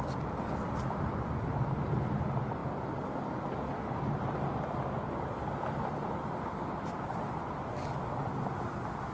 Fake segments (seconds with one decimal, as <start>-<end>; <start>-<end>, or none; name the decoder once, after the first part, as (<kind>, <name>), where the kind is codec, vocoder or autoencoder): none